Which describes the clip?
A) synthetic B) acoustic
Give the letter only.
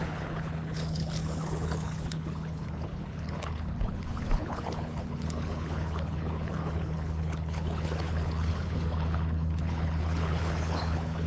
A